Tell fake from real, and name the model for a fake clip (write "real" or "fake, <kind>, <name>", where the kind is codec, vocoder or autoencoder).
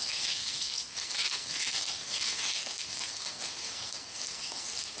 fake, codec, SNAC